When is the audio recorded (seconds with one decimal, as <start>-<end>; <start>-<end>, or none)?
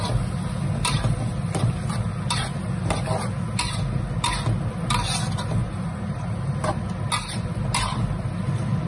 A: 0.0-5.6; 6.4-8.9